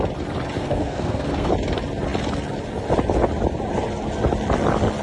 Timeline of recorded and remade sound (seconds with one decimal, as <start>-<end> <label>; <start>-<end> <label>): 0.0-0.6 recorded; 0.6-1.5 remade; 1.5-5.0 recorded